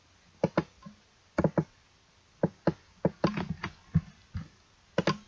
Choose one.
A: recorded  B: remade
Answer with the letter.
A